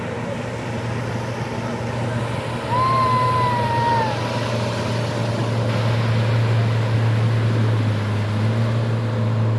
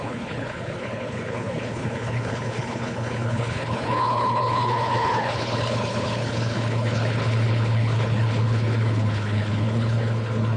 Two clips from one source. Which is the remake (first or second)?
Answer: second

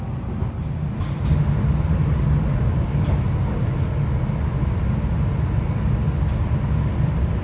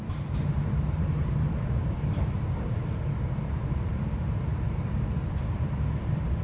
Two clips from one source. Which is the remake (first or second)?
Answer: second